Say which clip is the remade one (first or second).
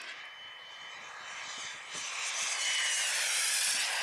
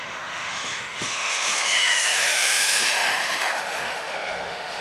second